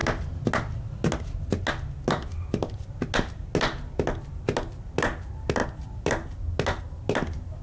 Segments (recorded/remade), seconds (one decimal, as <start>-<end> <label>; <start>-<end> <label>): 0.0-7.6 recorded